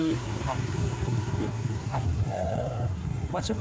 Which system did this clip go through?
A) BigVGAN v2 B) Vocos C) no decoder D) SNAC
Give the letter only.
D